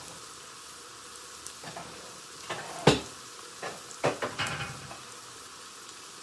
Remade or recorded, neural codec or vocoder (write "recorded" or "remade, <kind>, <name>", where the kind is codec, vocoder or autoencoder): recorded